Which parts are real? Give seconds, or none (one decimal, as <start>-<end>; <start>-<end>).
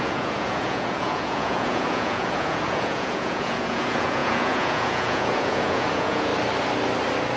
6.3-7.4